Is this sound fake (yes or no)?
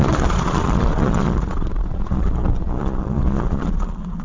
yes